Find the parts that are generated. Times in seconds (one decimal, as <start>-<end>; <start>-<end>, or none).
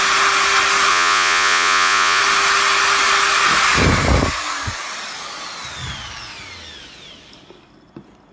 0.9-2.2